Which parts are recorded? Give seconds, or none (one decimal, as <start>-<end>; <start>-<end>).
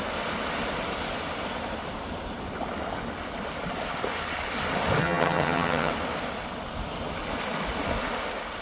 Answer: 0.0-5.0; 5.9-8.6